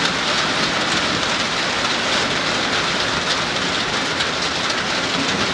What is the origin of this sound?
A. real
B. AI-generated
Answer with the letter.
A